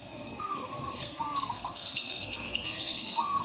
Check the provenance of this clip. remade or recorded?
remade